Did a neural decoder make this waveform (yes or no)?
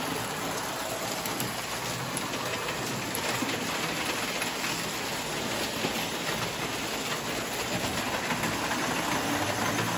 no